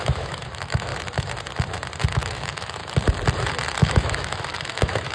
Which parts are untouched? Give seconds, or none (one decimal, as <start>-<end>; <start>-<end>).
0.9-2.1; 2.8-3.8